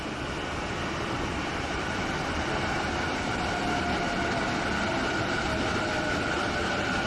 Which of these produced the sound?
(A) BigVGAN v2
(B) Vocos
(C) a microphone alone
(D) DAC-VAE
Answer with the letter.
C